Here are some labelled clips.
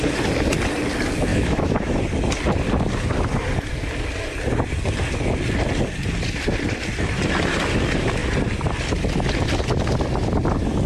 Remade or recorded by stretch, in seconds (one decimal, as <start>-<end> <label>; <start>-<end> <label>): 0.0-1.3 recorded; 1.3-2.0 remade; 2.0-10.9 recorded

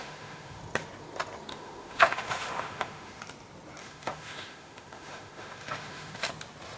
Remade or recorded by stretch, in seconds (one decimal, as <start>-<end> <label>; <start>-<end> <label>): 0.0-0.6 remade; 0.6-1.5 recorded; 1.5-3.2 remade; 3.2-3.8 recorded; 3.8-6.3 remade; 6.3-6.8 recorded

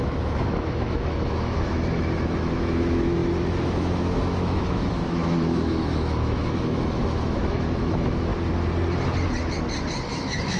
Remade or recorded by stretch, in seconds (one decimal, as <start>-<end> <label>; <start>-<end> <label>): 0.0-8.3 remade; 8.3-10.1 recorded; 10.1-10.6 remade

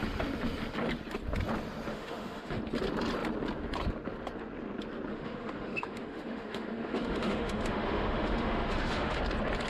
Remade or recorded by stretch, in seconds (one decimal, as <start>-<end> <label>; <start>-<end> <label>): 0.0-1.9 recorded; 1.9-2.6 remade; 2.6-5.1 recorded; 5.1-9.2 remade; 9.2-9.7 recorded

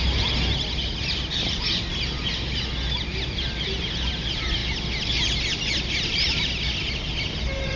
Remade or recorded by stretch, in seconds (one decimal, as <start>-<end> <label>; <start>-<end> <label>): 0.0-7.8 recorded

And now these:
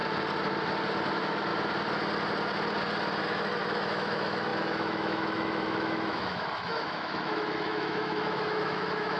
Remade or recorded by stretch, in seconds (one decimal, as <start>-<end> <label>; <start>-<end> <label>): 0.0-1.1 recorded; 1.1-1.5 remade; 1.5-3.2 recorded; 3.2-9.2 remade

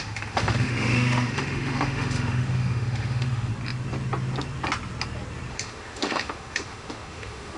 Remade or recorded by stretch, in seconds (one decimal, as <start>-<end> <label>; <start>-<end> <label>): 0.0-3.5 remade; 3.5-5.5 recorded; 5.5-7.6 remade